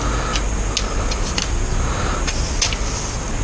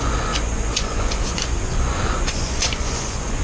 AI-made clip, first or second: second